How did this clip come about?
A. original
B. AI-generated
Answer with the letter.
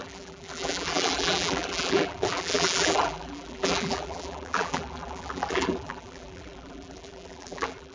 B